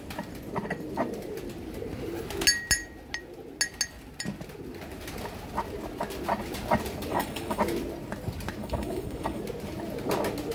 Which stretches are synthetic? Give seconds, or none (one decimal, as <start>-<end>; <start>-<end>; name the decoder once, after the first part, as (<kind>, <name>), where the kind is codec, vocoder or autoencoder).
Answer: 7.1-7.6 (codec, DAC); 8.6-9.4